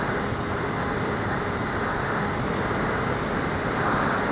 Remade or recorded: recorded